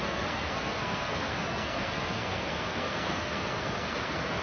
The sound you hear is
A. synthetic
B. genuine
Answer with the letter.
A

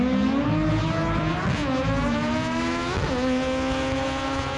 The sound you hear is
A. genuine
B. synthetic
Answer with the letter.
A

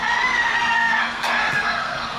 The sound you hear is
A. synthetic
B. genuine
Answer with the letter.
A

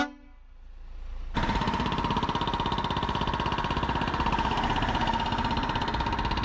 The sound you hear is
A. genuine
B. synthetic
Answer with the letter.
A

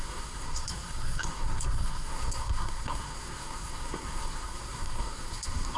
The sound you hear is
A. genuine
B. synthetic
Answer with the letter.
B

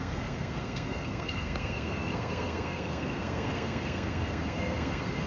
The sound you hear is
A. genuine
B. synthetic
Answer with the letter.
B